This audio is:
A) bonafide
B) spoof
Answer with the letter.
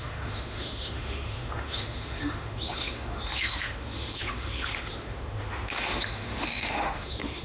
B